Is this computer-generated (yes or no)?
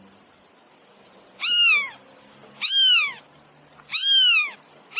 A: no